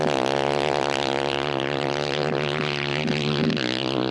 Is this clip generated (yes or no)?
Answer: no